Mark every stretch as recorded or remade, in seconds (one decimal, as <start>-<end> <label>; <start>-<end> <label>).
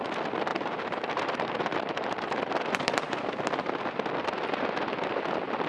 0.0-0.5 recorded; 0.5-3.9 remade; 3.9-5.7 recorded